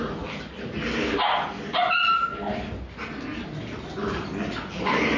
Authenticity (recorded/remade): recorded